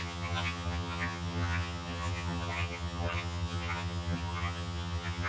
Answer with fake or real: fake